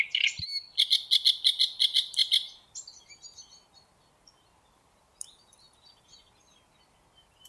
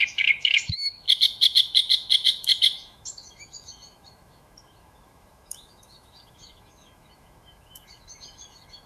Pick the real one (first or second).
first